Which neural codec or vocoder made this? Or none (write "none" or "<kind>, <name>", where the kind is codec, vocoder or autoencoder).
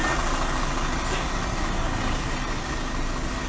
none